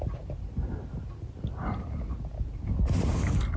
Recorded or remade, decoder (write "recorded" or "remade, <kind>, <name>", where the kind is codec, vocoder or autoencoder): recorded